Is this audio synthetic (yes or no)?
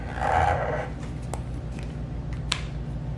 no